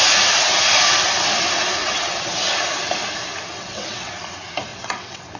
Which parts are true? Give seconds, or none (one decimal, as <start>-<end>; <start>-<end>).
0.0-1.8; 2.3-3.5; 4.1-4.7